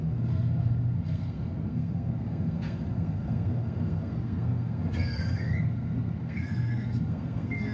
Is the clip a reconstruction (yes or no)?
yes